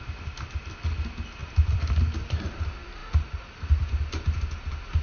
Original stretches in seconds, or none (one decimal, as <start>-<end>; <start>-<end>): 0.0-1.4; 2.0-5.0